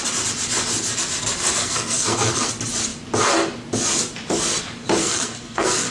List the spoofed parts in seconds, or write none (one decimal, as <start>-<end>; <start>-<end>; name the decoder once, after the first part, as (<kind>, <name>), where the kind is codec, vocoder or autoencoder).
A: 1.6-2.5 (codec, SNAC); 5.0-5.9